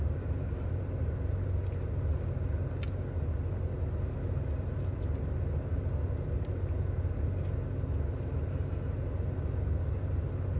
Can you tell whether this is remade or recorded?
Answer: recorded